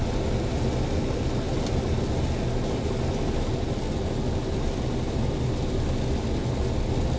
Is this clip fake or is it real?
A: real